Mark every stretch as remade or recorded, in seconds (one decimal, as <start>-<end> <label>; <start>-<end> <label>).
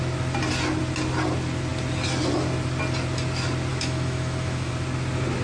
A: 0.0-3.7 recorded; 3.7-4.7 remade; 4.7-5.4 recorded